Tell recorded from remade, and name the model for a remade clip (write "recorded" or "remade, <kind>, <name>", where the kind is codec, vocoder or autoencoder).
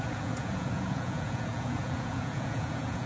remade, vocoder, Vocos